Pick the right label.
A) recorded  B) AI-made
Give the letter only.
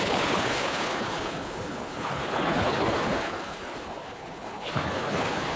B